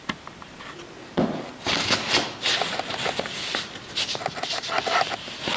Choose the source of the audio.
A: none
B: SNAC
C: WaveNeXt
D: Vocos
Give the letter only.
A